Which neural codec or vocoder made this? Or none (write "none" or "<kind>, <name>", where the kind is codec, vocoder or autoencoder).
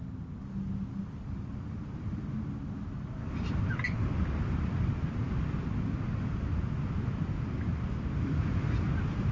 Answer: none